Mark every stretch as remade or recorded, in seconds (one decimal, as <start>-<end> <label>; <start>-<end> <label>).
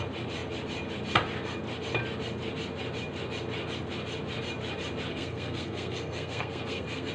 0.0-5.1 recorded; 5.1-7.1 remade